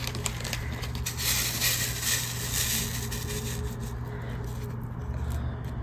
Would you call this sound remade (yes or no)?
no